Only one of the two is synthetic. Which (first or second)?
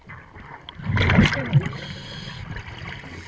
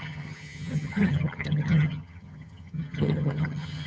second